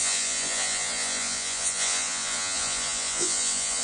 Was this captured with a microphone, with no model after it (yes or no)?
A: no